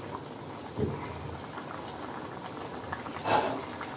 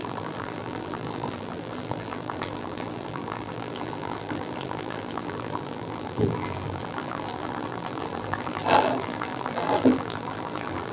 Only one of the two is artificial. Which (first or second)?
second